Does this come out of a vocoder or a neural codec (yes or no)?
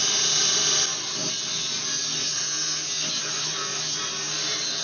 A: no